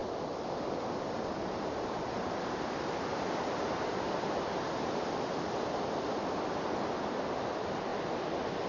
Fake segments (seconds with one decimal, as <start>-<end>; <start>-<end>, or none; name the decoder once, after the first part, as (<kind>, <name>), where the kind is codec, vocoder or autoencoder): 0.0-4.5 (vocoder, BigVGAN v2)